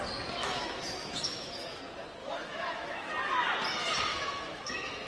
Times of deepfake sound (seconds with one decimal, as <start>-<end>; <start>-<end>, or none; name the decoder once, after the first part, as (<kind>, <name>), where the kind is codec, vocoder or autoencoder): 0.4-1.8 (autoencoder, DAC-VAE); 2.2-3.1; 4.1-5.1